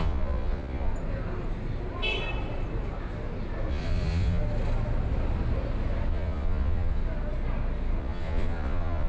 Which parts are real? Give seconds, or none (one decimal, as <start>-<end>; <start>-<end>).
0.9-3.7; 4.4-6.1; 7.0-8.0